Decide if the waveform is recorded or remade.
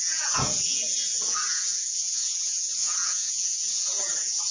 remade